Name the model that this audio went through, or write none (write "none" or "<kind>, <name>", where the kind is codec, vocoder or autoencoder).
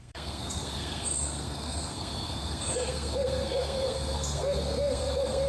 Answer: codec, SNAC